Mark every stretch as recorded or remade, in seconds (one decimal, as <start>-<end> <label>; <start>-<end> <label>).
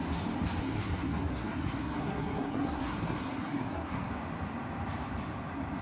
0.0-0.6 recorded; 0.6-4.1 remade; 4.1-5.8 recorded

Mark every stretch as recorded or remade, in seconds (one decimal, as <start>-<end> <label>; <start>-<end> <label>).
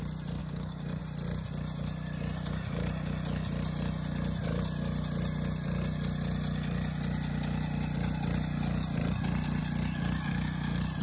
0.0-0.4 recorded; 0.4-1.0 remade; 1.0-11.0 recorded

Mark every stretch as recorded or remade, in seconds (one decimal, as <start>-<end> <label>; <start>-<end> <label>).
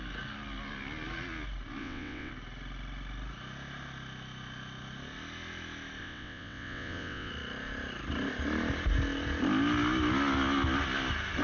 0.0-1.8 recorded; 1.8-2.3 remade; 2.3-6.0 recorded; 6.0-7.3 remade; 7.3-11.4 recorded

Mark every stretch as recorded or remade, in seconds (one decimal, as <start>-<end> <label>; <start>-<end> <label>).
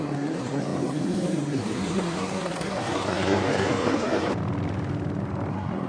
0.0-4.3 remade; 4.3-5.5 recorded; 5.5-5.9 remade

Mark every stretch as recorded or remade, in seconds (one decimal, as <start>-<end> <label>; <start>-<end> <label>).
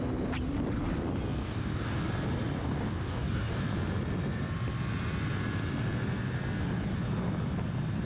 0.0-1.4 recorded; 1.4-2.0 remade; 2.0-2.6 recorded; 2.6-3.6 remade; 3.6-8.1 recorded